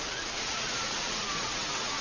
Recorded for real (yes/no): no